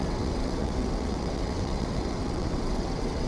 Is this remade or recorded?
remade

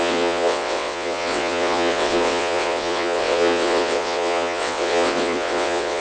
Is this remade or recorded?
remade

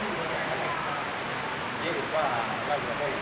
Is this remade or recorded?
recorded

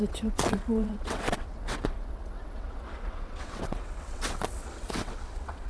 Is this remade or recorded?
remade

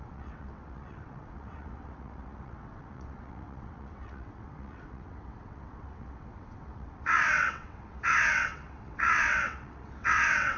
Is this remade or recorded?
remade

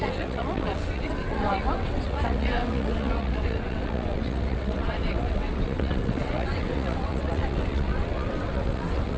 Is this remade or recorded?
remade